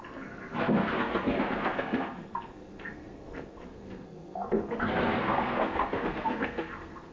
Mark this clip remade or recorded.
remade